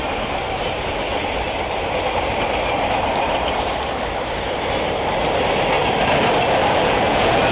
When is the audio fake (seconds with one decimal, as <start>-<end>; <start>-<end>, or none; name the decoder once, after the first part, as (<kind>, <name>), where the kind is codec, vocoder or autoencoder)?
6.6-7.5 (vocoder, Vocos)